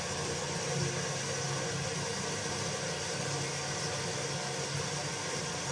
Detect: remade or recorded recorded